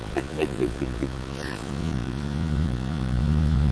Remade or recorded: remade